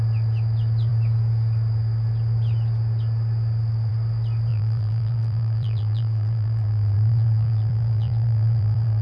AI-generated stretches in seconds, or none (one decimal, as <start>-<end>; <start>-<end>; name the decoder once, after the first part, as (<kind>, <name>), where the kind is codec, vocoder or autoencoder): 4.5-9.0 (vocoder, BigVGAN v2)